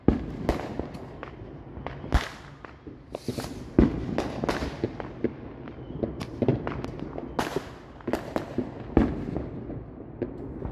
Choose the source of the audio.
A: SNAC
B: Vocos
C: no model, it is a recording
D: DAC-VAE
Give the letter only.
C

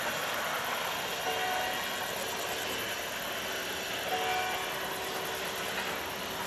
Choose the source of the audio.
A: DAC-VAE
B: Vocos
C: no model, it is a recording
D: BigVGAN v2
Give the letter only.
C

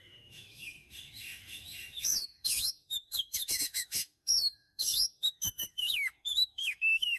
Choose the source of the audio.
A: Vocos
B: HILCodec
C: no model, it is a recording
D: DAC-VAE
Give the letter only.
D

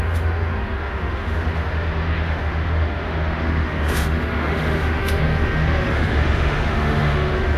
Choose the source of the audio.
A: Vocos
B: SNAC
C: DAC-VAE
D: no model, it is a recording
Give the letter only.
C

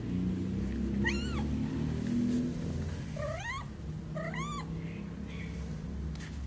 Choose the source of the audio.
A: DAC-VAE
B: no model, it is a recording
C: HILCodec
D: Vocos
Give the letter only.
B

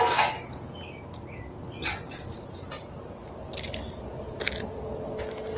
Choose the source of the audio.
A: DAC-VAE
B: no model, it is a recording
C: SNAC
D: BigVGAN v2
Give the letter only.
B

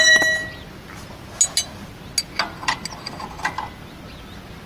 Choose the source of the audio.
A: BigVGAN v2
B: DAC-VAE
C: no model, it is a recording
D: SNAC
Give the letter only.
C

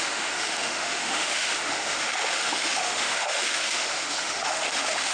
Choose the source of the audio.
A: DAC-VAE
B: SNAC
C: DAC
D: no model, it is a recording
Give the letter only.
A